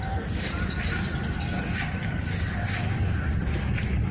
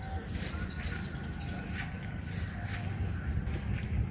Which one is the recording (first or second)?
second